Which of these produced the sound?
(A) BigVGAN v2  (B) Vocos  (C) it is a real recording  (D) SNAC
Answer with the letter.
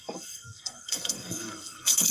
D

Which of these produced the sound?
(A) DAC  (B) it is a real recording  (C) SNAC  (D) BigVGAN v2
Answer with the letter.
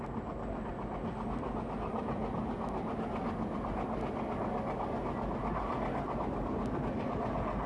B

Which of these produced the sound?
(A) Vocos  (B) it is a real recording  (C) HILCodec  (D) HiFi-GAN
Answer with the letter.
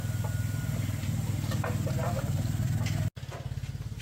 B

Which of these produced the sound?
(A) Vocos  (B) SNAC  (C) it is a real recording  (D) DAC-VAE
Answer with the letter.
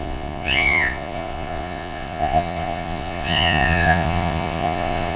A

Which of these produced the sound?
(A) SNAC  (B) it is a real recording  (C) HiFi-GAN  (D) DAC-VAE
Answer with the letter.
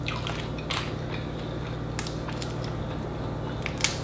B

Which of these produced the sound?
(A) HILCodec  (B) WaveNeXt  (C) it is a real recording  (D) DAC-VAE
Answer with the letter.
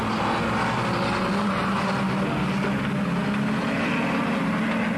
C